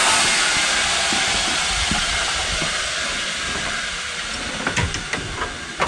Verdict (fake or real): real